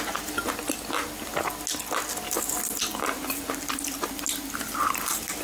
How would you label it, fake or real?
real